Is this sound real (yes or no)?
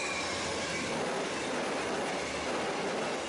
yes